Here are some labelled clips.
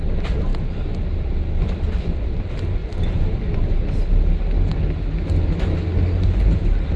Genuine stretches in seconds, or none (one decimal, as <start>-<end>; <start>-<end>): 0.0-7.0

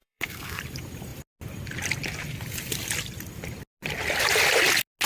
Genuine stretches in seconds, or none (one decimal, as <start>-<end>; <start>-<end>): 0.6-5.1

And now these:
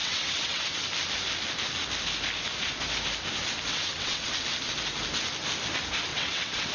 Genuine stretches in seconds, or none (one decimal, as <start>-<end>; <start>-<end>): 0.8-3.7; 4.3-6.1

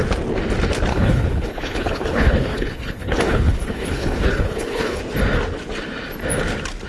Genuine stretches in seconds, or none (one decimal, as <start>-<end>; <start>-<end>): 0.0-0.9; 5.0-6.9

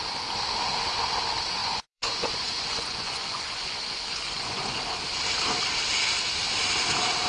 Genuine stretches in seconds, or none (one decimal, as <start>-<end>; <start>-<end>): 0.0-1.6; 4.8-7.3

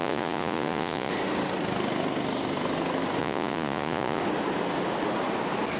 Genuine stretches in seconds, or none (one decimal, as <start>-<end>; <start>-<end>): 1.1-3.2; 4.2-5.8